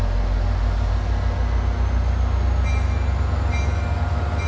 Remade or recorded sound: recorded